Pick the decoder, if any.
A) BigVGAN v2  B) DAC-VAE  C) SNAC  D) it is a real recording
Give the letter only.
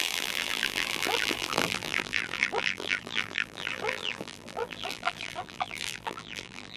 A